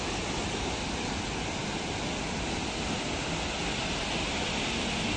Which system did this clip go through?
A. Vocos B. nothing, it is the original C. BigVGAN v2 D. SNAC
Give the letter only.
B